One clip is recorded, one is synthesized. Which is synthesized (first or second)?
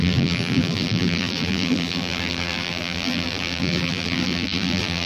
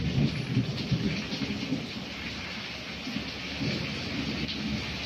first